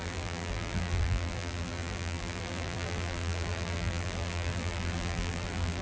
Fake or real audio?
fake